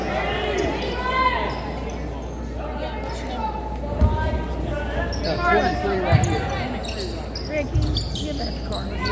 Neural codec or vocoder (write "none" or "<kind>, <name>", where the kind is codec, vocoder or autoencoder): none